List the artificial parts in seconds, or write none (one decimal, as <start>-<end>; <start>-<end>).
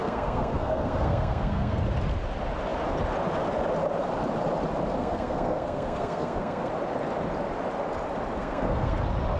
0.0-1.8; 5.0-6.7; 8.4-9.0